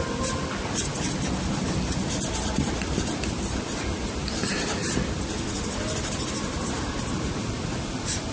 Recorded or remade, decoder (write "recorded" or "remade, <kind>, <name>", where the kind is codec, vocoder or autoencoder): recorded